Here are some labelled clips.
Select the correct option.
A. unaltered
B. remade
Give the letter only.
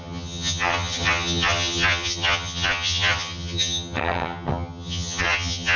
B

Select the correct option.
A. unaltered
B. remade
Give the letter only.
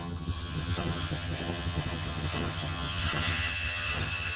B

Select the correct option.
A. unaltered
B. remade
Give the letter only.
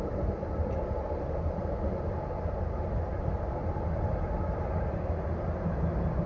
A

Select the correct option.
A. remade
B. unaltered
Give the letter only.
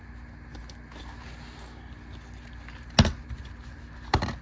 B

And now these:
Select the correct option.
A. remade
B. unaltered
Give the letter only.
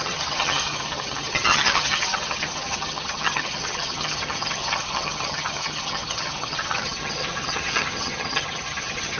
A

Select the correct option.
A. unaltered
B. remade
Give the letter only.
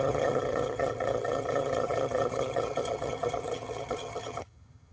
B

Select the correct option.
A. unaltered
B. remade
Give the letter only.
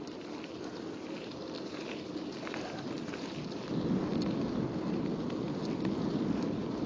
A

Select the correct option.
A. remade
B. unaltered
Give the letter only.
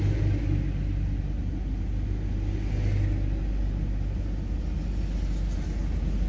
B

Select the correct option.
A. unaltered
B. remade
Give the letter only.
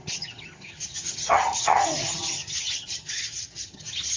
B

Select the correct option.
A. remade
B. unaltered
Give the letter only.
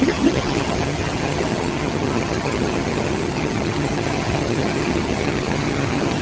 A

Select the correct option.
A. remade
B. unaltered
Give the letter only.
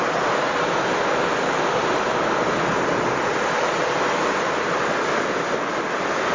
B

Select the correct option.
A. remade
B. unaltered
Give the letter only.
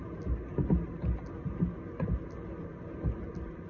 B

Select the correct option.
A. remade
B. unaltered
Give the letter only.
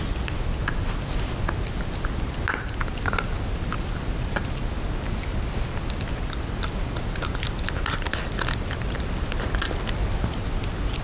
B